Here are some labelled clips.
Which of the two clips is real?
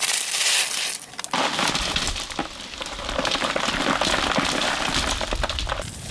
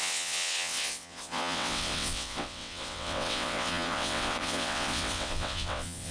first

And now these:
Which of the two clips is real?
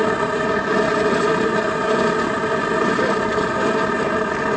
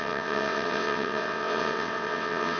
first